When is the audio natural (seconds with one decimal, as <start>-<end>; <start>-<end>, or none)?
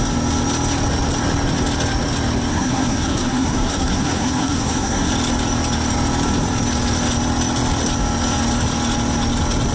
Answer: 0.0-2.5; 5.1-9.7